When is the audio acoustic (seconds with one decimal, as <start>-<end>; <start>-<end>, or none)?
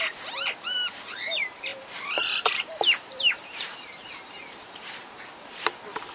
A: none